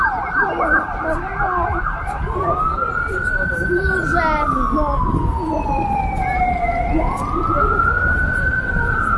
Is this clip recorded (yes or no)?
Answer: yes